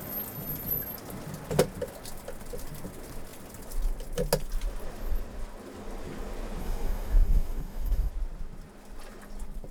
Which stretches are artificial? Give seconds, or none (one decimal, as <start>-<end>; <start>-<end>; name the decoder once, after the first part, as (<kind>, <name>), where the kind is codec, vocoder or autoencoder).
6.6-8.1 (codec, DAC)